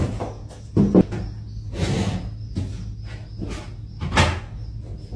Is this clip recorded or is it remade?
recorded